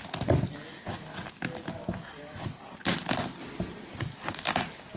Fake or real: real